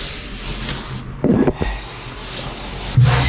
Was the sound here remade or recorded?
recorded